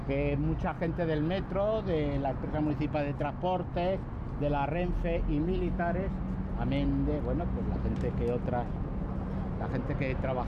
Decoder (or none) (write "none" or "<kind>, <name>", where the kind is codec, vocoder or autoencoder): none